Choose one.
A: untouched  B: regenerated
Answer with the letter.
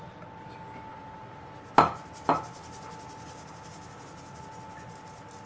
A